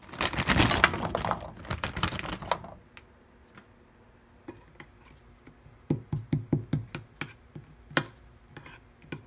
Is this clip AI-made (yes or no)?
no